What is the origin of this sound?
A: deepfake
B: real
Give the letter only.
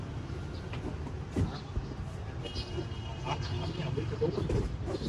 B